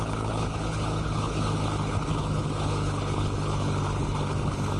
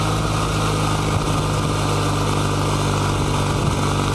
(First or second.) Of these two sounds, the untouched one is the second